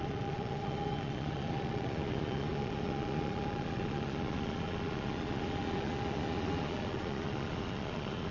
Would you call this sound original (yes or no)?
no